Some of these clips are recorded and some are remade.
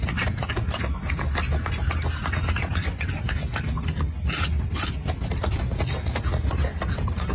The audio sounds recorded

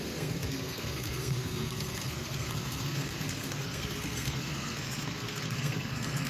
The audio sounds remade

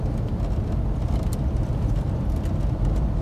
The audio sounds recorded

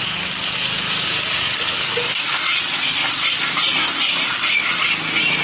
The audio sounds recorded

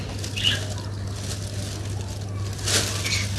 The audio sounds recorded